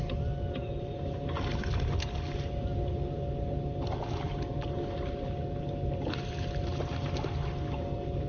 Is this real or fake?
real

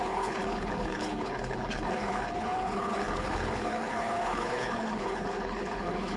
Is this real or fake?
fake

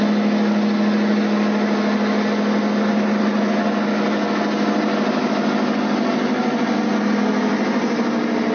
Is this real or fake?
real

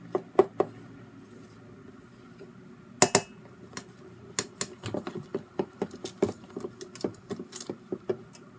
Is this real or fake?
real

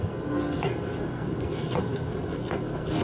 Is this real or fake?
fake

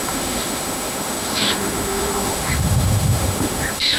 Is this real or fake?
fake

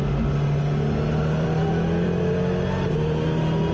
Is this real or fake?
real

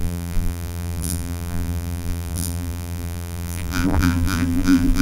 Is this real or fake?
fake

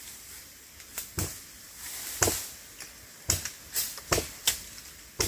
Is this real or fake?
real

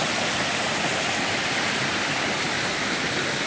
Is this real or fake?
real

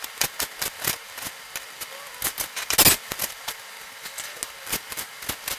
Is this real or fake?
real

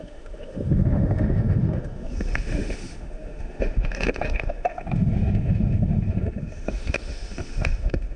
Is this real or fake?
fake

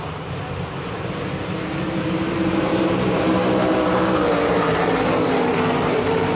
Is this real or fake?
fake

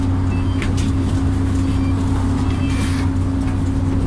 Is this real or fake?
real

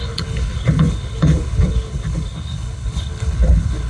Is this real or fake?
fake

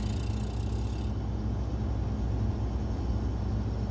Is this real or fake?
real